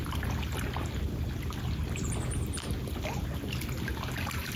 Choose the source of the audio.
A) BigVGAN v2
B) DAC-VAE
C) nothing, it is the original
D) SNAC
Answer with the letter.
C